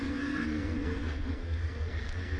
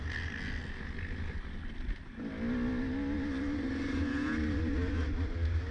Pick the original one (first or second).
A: second